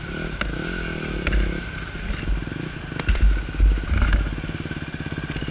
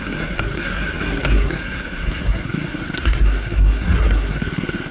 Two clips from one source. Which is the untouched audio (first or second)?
first